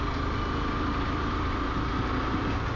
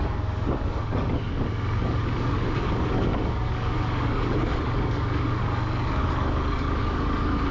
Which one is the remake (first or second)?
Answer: second